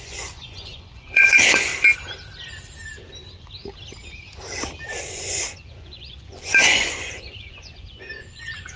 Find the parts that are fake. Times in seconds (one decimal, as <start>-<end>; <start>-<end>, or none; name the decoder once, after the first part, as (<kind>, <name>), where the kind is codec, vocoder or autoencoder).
0.0-1.7 (vocoder, Vocos); 5.1-8.8